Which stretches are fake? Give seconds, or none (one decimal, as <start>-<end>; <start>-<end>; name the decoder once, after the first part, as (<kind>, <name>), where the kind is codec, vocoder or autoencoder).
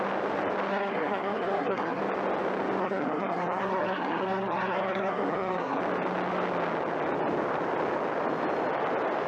0.7-2.0 (codec, SNAC); 2.8-5.8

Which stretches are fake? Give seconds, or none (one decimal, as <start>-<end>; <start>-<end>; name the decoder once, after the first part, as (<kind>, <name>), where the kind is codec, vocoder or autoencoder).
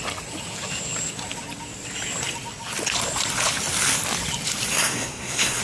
4.7-5.6 (codec, SNAC)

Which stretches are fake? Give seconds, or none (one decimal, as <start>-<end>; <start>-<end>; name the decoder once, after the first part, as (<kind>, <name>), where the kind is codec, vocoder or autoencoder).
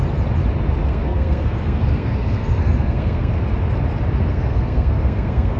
0.8-3.4 (codec, SNAC); 4.3-5.6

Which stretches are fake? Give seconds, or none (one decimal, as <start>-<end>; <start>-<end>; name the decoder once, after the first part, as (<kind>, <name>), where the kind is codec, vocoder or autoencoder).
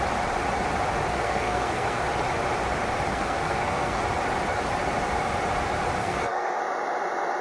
1.1-2.0 (codec, SNAC); 3.1-4.0; 6.0-6.6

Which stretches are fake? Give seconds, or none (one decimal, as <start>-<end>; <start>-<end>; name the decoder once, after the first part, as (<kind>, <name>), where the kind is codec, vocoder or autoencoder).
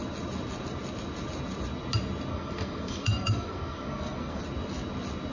2.3-4.4 (codec, SNAC)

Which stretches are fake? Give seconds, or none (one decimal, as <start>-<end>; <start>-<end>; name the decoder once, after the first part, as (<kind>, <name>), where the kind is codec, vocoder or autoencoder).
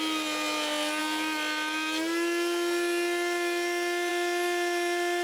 none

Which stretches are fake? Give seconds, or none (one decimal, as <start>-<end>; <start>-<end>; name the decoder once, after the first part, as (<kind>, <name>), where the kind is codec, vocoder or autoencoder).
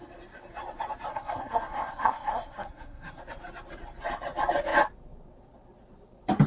1.1-3.2 (codec, SNAC)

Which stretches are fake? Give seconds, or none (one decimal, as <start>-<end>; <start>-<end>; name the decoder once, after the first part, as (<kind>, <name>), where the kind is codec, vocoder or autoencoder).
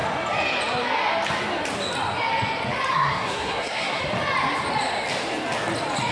2.9-4.0 (codec, SNAC)